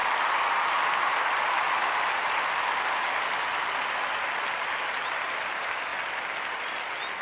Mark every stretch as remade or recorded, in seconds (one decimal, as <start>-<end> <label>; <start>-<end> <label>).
0.0-7.2 recorded

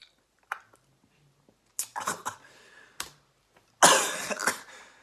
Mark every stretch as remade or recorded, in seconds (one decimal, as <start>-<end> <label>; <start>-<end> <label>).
0.0-0.6 remade; 0.6-1.9 recorded; 1.9-2.8 remade; 2.8-5.0 recorded

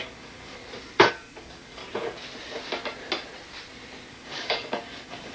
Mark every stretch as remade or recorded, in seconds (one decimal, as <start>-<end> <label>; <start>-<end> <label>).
0.0-0.6 remade; 0.6-1.1 recorded; 1.1-1.8 remade; 1.8-4.1 recorded; 4.1-5.3 remade

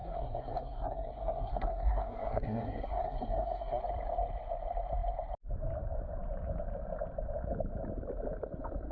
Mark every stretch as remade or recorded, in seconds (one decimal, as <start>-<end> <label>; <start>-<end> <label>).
0.0-3.8 remade; 3.8-8.9 recorded